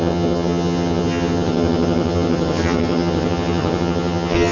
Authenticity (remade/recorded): remade